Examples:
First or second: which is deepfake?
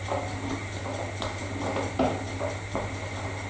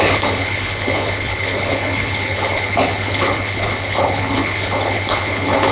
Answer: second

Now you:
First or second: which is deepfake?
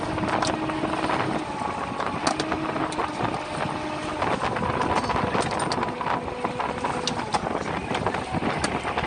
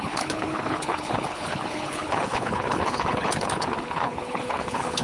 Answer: second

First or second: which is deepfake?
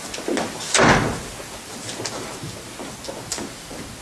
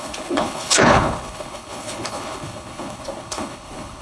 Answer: second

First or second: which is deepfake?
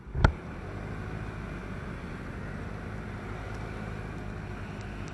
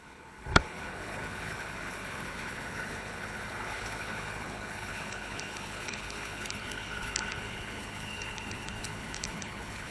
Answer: second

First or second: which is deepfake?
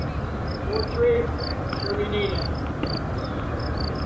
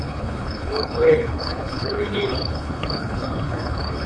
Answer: second